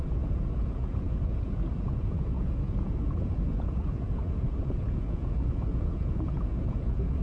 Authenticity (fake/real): fake